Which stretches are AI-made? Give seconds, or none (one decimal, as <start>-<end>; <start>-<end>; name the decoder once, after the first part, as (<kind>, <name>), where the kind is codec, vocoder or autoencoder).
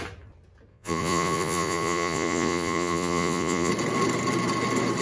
0.7-3.7 (vocoder, Vocos)